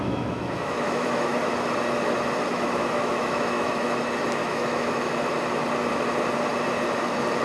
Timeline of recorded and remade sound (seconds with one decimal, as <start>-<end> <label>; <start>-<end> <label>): 0.0-1.4 remade; 1.4-2.5 recorded; 2.5-4.0 remade; 4.0-4.4 recorded; 4.4-5.1 remade; 5.1-7.4 recorded